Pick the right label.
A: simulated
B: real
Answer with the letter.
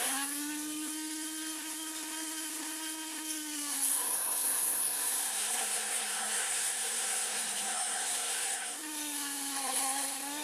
A